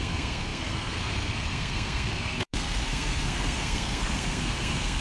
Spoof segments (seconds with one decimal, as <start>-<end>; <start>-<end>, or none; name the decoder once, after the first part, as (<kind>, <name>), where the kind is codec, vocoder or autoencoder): 0.0-5.0 (codec, SNAC)

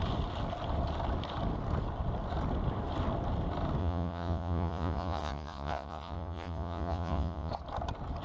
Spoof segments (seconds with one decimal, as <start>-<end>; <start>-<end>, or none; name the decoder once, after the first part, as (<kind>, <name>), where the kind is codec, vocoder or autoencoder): 3.8-7.5 (vocoder, Vocos)